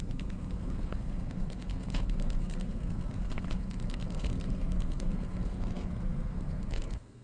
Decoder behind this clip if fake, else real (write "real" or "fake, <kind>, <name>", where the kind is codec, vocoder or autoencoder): fake, codec, SNAC